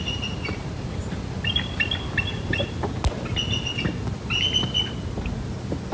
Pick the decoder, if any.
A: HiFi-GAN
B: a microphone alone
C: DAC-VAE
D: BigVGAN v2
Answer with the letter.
B